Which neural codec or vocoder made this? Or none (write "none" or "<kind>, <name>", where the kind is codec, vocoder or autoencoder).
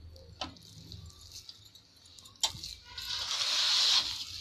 none